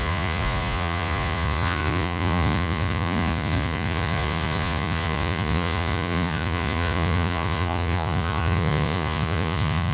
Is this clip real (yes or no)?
no